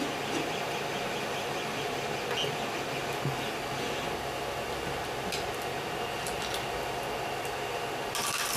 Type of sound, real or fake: real